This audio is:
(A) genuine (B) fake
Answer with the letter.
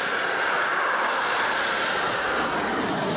A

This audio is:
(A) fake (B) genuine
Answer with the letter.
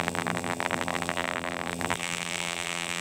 A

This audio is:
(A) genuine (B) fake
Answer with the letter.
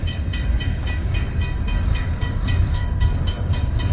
B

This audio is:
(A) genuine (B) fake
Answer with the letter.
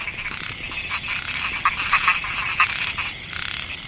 A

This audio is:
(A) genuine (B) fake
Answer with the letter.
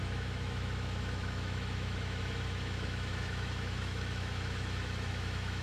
B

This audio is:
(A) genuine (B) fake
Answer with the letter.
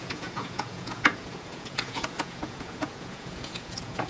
B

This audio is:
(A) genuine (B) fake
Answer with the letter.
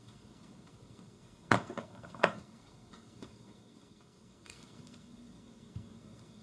B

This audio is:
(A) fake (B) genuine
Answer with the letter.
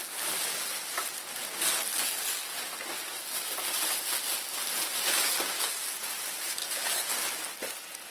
B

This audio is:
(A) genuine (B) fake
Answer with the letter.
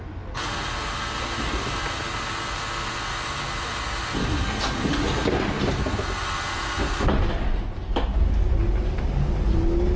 A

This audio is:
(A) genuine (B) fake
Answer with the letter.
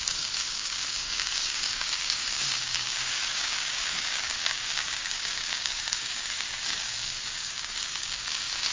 B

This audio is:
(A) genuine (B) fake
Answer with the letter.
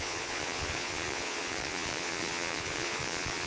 B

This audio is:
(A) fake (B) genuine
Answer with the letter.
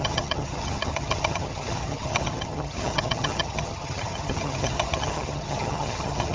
A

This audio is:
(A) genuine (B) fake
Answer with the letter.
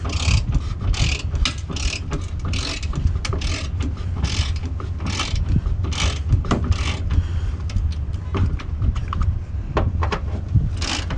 A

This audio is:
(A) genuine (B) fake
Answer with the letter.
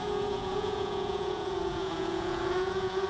B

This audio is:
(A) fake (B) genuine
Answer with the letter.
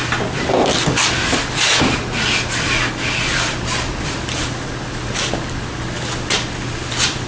B